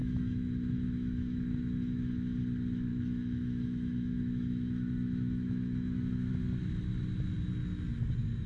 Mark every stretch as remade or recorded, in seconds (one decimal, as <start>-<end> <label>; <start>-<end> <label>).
0.0-2.1 remade; 2.1-2.9 recorded; 2.9-6.3 remade; 6.3-8.5 recorded